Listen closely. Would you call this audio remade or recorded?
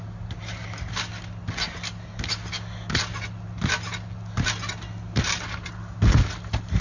recorded